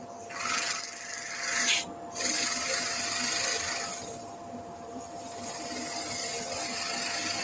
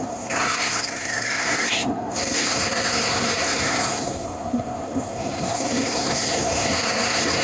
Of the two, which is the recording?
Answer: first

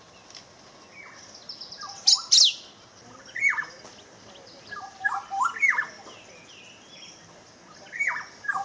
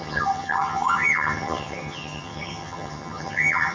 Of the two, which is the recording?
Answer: first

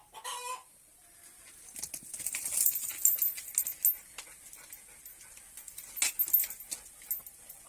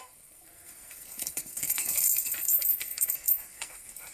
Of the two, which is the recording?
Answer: first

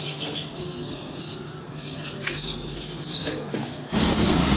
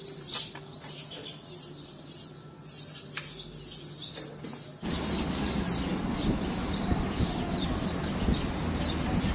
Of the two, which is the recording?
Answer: second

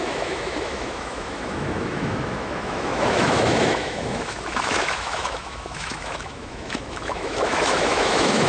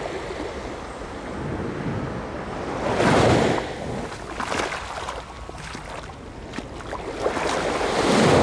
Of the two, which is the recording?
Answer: second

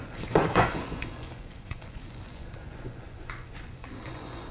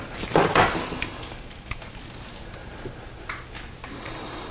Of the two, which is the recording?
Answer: second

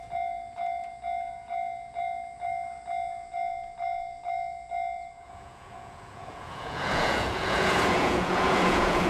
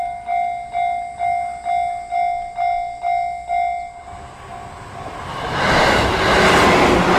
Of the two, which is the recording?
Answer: second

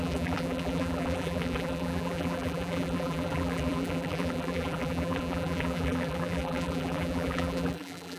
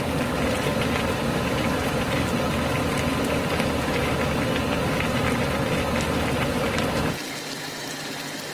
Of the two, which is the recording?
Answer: second